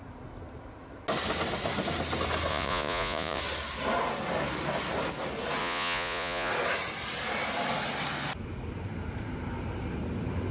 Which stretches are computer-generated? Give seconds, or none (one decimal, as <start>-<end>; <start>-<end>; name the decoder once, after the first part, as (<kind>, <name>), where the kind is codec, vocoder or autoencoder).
2.5-3.4 (vocoder, Vocos); 5.6-6.5